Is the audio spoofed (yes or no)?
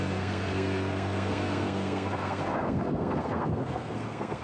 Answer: yes